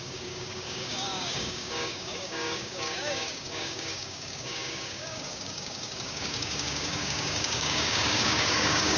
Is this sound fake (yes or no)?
yes